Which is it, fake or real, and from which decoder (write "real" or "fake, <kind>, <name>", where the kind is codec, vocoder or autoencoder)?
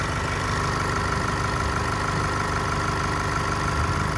real